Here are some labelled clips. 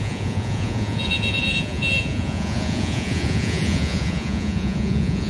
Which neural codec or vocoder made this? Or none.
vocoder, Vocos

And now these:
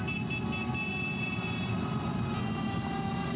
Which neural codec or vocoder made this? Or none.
none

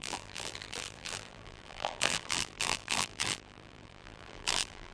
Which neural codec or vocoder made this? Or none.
vocoder, BigVGAN v2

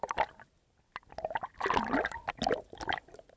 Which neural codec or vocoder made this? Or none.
none